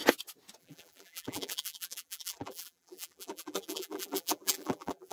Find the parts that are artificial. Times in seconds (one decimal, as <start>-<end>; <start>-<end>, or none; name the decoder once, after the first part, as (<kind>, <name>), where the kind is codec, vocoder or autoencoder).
0.6-5.1 (vocoder, BigVGAN v2)